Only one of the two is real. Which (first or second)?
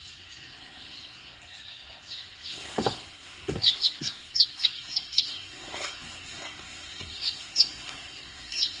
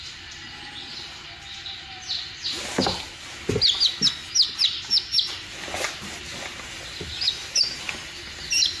second